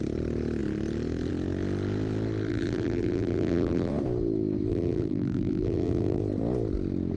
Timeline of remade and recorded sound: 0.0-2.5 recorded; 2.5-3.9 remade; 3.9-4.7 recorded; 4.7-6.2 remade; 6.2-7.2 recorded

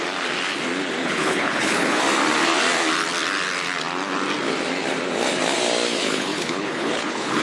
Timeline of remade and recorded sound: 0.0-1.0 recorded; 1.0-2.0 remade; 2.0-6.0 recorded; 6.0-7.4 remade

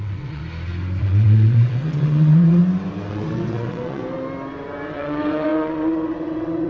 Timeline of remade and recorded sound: 0.0-0.4 remade; 0.4-1.0 recorded; 1.0-2.6 remade; 2.6-3.1 recorded; 3.1-4.0 remade; 4.0-4.9 recorded; 4.9-6.7 remade

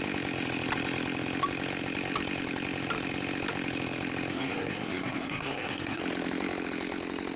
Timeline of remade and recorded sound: 0.0-4.3 recorded; 4.3-6.0 remade; 6.0-7.4 recorded

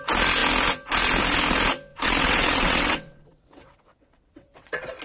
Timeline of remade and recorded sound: 0.0-1.9 recorded; 1.9-5.0 remade